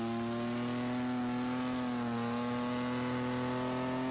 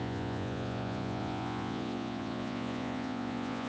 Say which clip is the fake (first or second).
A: second